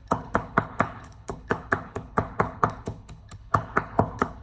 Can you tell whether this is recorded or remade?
remade